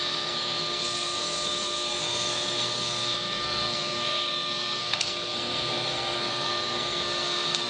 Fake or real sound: fake